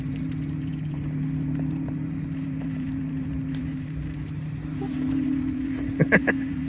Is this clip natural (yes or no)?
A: no